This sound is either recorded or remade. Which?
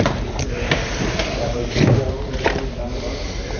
recorded